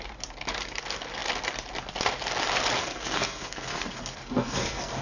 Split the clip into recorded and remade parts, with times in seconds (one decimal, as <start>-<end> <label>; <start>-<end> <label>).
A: 0.0-2.8 recorded; 2.8-5.0 remade